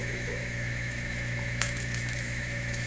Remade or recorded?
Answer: remade